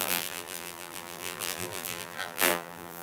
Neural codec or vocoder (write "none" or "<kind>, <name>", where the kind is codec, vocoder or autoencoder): vocoder, BigVGAN v2